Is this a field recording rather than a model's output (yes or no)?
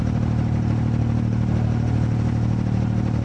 yes